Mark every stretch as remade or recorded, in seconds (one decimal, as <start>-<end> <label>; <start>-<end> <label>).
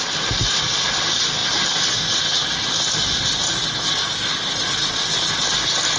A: 0.0-6.0 recorded